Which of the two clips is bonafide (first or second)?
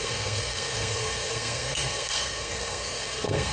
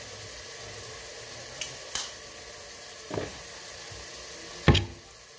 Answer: second